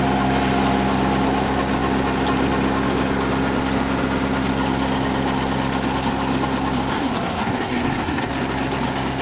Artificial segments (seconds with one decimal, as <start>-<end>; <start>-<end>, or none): 6.9-8.3